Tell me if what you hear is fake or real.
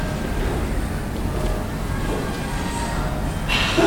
real